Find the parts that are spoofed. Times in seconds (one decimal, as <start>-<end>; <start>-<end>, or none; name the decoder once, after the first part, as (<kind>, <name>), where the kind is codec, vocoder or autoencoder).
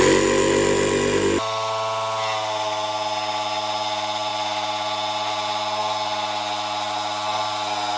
none